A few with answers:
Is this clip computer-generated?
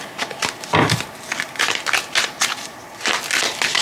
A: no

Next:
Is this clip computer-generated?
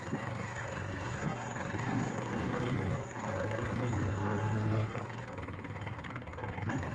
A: yes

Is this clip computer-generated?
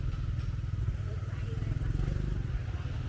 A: no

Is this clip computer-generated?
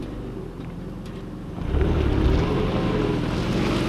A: no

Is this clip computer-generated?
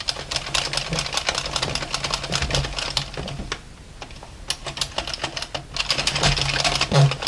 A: no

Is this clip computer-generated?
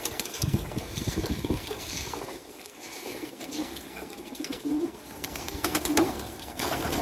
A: yes